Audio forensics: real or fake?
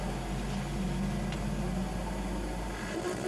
real